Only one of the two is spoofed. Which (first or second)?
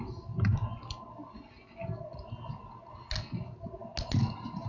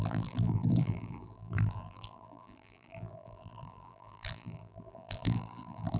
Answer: second